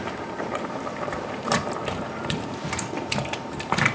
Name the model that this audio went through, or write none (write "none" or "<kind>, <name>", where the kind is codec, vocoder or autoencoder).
vocoder, BigVGAN v2